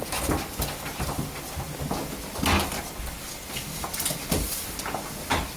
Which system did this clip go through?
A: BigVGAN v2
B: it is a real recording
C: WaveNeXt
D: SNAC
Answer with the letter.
B